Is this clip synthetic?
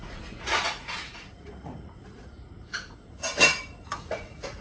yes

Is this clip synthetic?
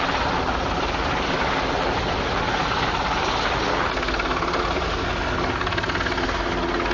no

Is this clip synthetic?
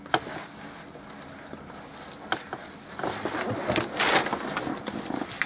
no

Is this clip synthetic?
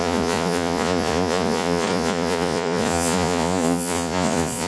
yes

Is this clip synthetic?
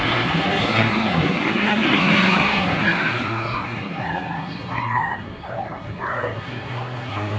yes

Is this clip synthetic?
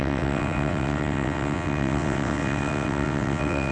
yes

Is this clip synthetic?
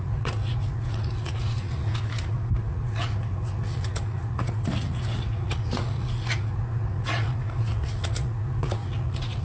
yes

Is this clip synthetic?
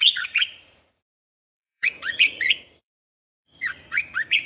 yes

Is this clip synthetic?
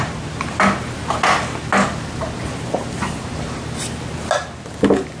no